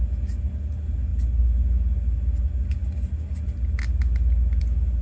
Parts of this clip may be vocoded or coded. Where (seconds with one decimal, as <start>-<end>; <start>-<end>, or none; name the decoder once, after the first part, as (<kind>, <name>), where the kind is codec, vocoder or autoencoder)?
none